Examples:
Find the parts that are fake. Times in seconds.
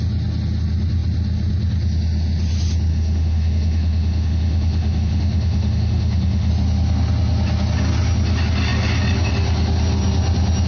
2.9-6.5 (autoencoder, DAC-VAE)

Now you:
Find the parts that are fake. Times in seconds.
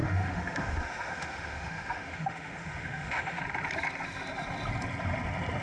0.0-3.4 (autoencoder, DAC-VAE)